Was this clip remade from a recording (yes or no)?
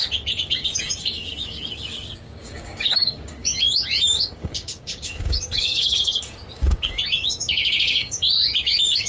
yes